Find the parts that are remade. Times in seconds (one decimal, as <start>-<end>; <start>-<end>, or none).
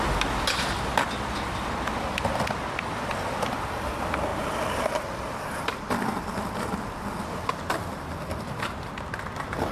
none